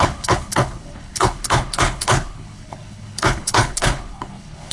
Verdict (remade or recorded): remade